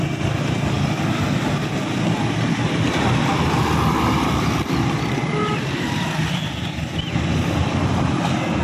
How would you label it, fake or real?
real